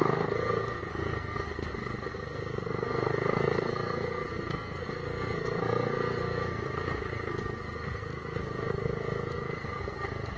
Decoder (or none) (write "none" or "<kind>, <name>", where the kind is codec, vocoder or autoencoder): codec, SNAC